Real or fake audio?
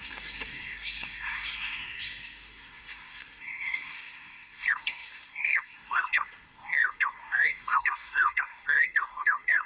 fake